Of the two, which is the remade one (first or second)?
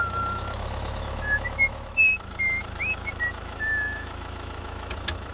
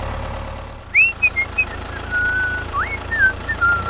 first